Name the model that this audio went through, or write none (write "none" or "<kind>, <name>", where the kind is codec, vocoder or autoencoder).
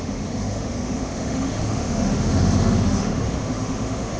autoencoder, DAC-VAE